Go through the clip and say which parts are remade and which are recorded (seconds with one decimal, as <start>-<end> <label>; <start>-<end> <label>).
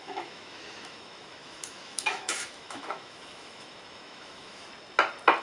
0.0-4.6 remade; 4.6-5.4 recorded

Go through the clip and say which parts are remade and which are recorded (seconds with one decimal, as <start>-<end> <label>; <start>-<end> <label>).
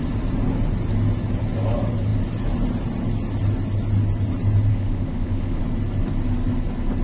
0.0-4.7 recorded; 4.7-5.6 remade; 5.6-7.0 recorded